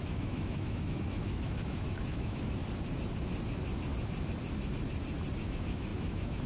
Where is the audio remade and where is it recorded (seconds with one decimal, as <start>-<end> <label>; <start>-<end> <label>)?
0.0-2.6 remade; 2.6-5.4 recorded; 5.4-6.5 remade